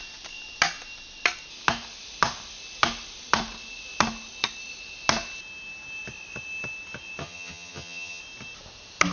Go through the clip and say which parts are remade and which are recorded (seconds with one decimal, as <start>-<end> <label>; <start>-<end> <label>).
0.0-7.2 recorded; 7.2-8.2 remade; 8.2-9.1 recorded

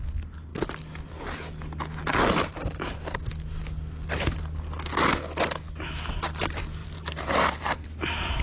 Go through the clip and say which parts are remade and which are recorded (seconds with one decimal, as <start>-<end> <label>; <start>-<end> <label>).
0.0-6.8 recorded; 6.8-8.4 remade

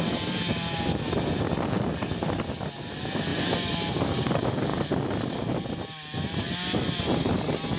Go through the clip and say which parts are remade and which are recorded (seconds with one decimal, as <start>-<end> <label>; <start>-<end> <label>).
0.0-7.8 recorded

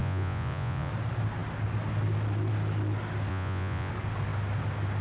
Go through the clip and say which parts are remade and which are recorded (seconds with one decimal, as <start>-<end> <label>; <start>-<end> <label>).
0.0-0.9 remade; 0.9-3.3 recorded; 3.3-3.9 remade; 3.9-5.0 recorded

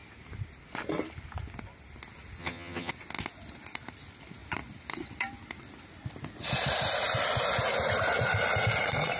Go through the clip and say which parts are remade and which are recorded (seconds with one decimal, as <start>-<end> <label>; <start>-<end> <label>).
0.0-2.4 recorded; 2.4-2.9 remade; 2.9-9.2 recorded

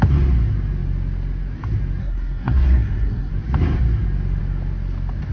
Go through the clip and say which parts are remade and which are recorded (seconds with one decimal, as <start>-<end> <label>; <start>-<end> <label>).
0.0-2.0 recorded; 2.0-3.3 remade; 3.3-5.3 recorded

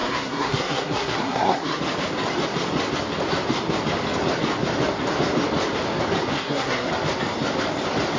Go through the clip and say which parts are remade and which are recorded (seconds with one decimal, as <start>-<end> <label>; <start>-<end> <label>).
0.0-1.8 remade; 1.8-6.3 recorded; 6.3-6.9 remade; 6.9-8.2 recorded